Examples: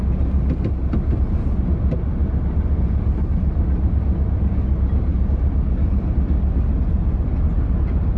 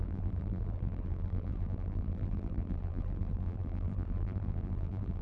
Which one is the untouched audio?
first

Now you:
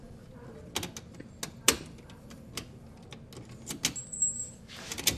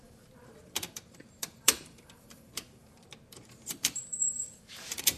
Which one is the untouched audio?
first